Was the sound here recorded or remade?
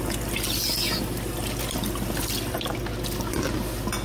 recorded